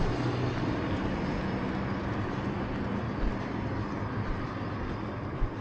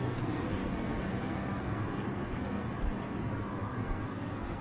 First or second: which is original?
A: first